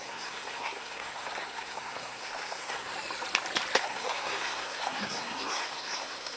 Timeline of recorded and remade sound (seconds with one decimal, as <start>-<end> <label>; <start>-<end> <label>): 0.0-2.9 remade; 2.9-3.8 recorded; 3.8-6.4 remade